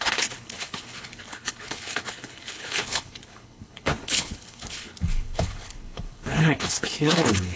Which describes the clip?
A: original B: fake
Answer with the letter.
B